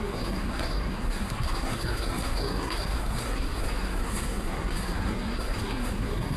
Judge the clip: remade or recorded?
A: remade